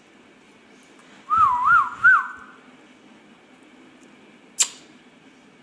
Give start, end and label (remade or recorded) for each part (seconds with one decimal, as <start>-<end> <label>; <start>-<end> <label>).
0.0-5.6 recorded